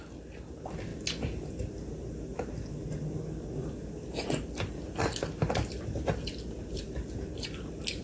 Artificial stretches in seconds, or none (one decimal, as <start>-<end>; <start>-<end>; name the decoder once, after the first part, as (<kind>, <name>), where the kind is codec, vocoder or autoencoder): none